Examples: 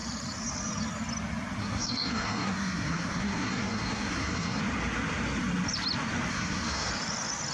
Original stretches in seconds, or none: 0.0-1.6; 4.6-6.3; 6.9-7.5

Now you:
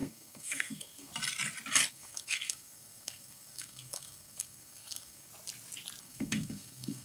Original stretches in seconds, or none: 1.1-1.9; 5.3-6.0

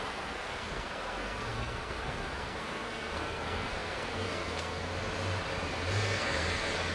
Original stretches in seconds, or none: 4.9-5.9

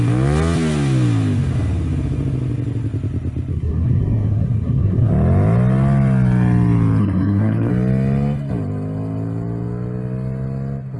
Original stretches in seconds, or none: 0.0-3.5; 5.1-7.0; 7.7-11.0

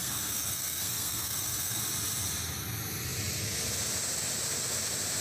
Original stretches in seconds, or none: 1.8-5.2

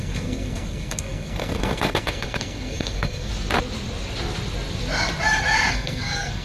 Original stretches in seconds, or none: 3.3-5.7

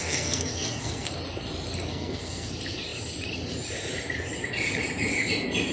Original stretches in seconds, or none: 1.1-1.9; 2.5-5.7